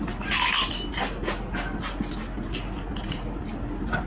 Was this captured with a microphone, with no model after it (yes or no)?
yes